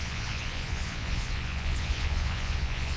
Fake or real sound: fake